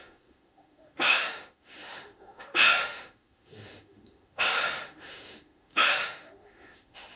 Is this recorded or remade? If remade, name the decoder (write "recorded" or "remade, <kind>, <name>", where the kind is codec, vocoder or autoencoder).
remade, autoencoder, DAC-VAE